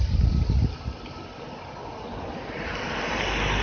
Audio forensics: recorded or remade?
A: recorded